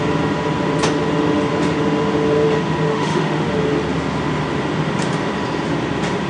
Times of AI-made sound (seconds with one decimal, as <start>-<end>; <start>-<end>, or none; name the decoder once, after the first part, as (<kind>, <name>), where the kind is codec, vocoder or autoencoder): 2.9-3.5 (autoencoder, DAC-VAE)